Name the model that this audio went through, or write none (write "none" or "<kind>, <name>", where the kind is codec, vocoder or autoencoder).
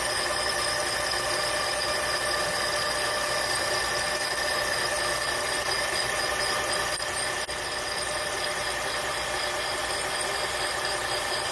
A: none